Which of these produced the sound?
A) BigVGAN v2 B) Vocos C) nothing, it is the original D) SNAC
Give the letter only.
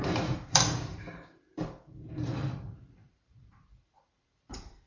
A